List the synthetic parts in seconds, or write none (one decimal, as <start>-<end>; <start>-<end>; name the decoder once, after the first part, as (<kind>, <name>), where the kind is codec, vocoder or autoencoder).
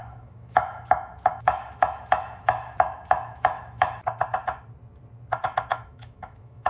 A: 0.0-4.0 (autoencoder, DAC-VAE); 5.7-6.7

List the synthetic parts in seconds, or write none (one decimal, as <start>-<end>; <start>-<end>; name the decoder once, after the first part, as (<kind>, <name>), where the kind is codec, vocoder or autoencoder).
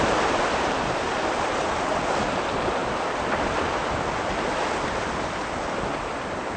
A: none